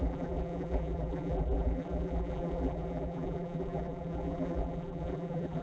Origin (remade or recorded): remade